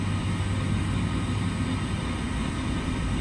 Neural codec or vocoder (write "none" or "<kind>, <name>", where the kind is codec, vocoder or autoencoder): none